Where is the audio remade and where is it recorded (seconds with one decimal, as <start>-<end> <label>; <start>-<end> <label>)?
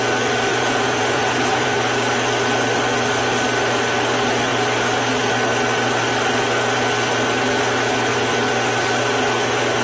0.0-0.5 recorded; 0.5-1.7 remade; 1.7-9.8 recorded